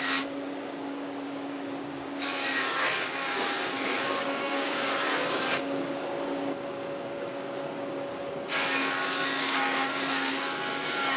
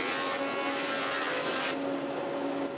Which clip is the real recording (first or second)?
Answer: second